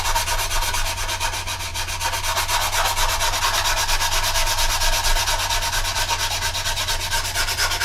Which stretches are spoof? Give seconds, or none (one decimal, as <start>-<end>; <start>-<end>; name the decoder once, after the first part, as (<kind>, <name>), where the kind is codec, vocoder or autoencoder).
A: none